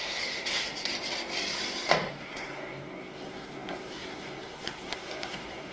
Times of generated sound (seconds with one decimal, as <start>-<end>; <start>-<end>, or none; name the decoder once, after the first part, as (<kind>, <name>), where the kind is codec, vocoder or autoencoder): 0.0-0.9 (codec, SNAC); 2.1-5.7